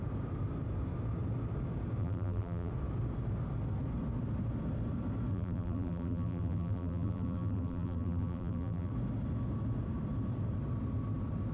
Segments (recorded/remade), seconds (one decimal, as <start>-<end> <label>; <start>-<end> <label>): 0.0-2.0 recorded; 2.0-2.7 remade; 2.7-5.3 recorded; 5.3-8.9 remade; 8.9-11.5 recorded